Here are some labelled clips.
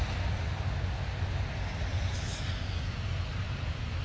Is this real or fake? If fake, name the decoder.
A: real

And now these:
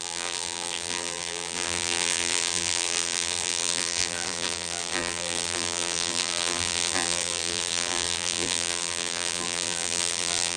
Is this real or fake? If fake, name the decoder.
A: fake, vocoder, BigVGAN v2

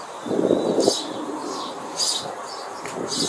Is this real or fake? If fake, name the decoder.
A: real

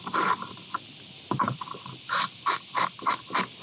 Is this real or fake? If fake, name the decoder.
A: fake, vocoder, BigVGAN v2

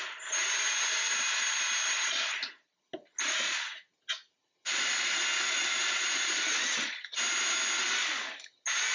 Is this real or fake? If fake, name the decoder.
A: real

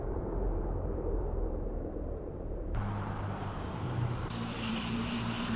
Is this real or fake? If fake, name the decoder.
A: fake, vocoder, BigVGAN v2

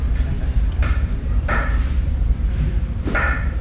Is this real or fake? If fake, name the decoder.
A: fake, vocoder, BigVGAN v2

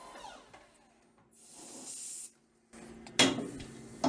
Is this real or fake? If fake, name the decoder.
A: real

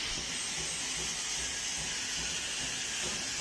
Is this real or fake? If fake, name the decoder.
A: real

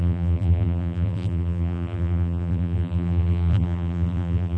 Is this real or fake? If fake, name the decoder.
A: fake, vocoder, BigVGAN v2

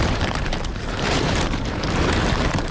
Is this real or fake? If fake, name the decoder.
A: fake, vocoder, BigVGAN v2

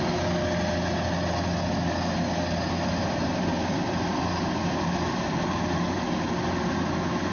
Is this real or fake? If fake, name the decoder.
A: real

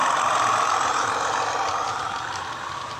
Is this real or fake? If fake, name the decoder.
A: real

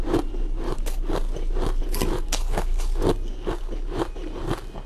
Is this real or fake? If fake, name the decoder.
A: real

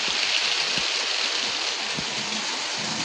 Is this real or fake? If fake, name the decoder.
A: real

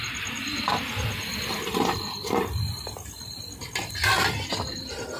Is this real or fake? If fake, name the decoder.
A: fake, vocoder, BigVGAN v2